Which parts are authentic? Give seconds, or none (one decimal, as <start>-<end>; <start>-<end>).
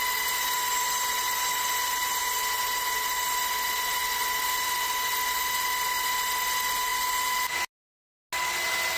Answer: 0.0-4.0; 5.1-9.0